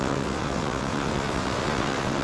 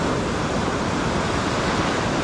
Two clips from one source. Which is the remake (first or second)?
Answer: first